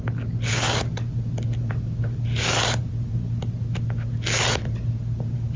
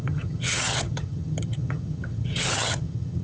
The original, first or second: first